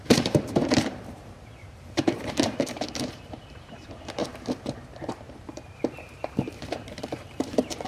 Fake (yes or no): yes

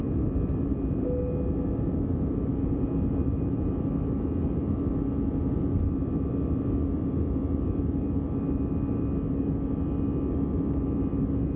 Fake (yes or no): no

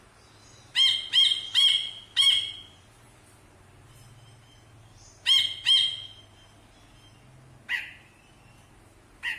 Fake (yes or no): no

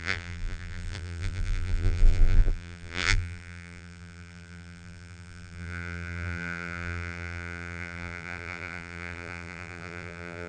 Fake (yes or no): yes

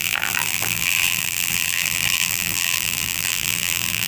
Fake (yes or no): yes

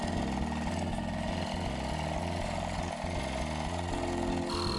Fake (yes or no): no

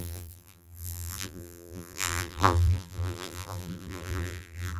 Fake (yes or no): yes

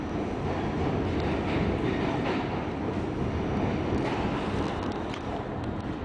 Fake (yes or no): no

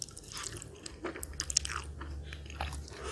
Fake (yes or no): no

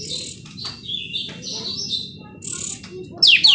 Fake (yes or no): no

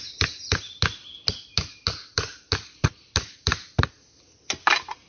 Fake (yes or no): no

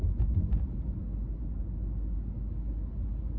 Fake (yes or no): no